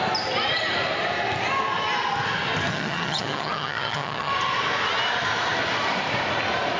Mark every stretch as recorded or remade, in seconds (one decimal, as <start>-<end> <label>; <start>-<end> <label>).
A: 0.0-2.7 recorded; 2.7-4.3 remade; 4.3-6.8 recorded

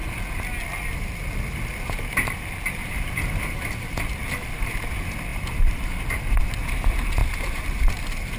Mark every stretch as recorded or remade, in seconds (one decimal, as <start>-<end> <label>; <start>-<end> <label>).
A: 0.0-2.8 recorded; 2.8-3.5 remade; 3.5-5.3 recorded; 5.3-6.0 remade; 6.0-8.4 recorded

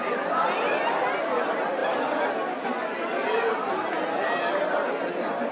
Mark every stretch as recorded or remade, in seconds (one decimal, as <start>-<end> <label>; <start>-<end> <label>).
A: 0.0-5.5 recorded